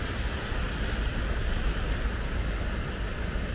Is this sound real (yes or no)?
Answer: yes